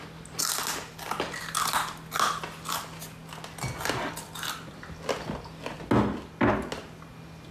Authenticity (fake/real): real